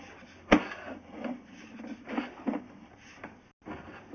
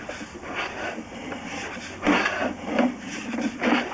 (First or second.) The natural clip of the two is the first